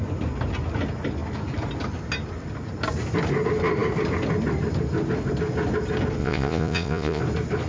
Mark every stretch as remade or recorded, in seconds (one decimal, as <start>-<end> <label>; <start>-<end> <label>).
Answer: 0.0-6.2 recorded; 6.2-7.2 remade; 7.2-7.7 recorded